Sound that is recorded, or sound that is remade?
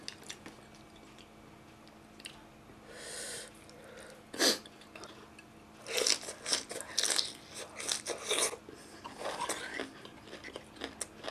recorded